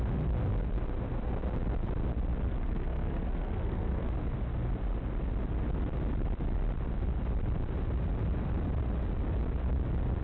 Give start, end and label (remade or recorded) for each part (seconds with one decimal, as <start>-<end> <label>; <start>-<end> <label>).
0.0-2.5 recorded; 2.5-4.1 remade; 4.1-10.2 recorded